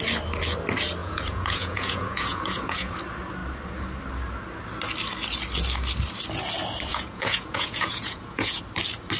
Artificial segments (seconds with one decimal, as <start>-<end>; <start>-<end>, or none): 1.0-2.9; 6.9-8.6